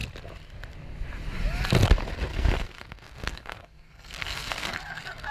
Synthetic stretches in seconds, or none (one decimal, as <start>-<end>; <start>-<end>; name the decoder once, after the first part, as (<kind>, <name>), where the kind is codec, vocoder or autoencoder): 2.3-5.3 (codec, SNAC)